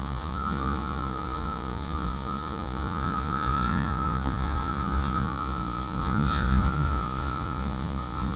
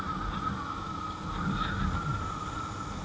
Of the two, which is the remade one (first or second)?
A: first